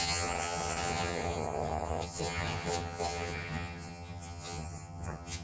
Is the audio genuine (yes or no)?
no